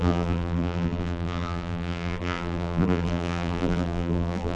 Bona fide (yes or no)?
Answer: no